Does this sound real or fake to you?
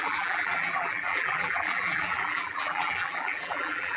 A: fake